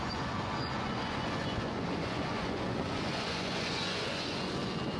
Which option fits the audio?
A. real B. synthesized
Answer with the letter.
B